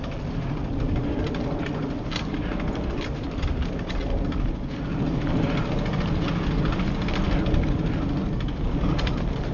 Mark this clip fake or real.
real